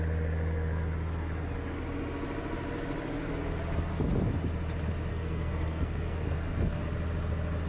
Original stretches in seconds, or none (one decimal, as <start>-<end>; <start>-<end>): 0.0-5.1; 6.8-7.7